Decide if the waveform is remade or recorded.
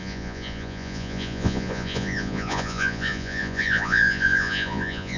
remade